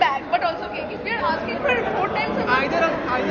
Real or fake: real